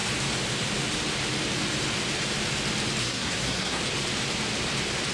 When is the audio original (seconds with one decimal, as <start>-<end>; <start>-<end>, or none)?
0.0-3.0; 3.8-5.1

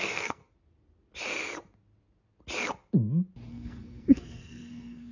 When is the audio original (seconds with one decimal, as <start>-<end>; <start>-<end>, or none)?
0.4-3.5

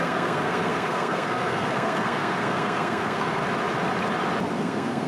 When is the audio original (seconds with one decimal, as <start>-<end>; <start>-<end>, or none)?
3.4-4.5

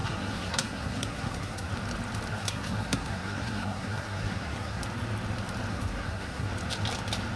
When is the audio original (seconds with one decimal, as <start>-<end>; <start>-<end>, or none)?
1.7-2.3; 4.8-5.7; 6.5-7.4